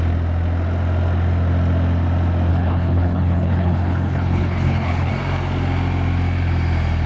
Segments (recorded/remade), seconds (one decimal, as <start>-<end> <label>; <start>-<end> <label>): 0.0-2.5 recorded; 2.5-5.1 remade; 5.1-7.1 recorded